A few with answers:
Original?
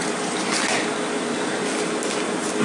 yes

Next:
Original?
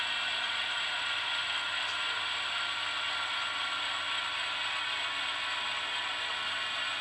no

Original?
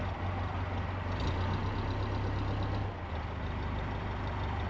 yes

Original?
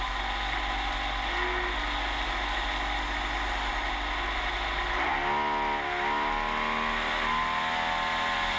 yes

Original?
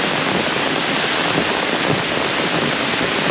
yes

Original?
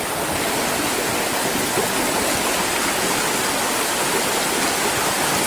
yes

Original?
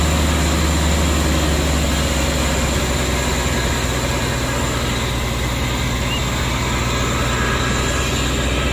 yes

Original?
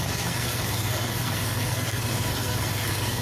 no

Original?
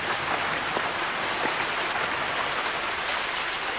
yes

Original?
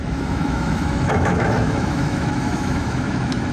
no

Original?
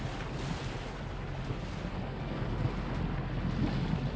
yes